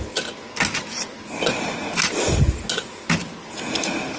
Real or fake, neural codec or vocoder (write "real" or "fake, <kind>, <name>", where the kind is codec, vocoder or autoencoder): real